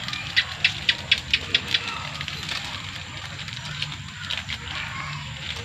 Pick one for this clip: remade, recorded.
recorded